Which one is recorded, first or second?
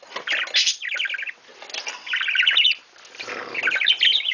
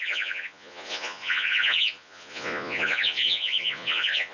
first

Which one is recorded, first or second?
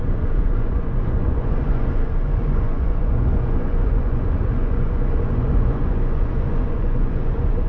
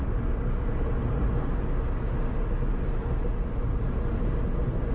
second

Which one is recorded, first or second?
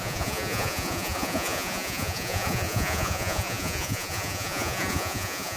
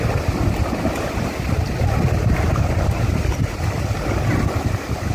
second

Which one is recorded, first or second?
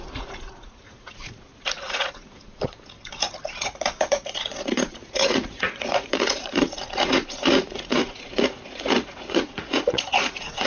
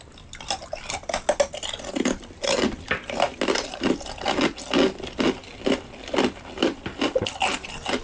second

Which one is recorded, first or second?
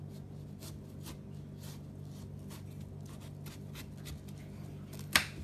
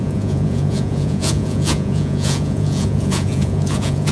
first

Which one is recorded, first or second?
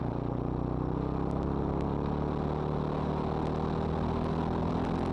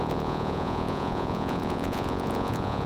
first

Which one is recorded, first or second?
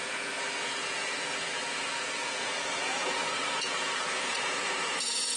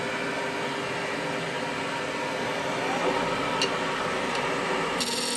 second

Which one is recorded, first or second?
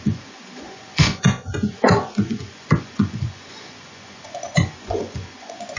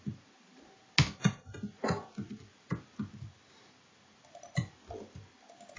second